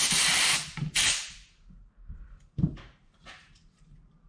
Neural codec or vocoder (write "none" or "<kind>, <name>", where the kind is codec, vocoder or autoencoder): vocoder, BigVGAN v2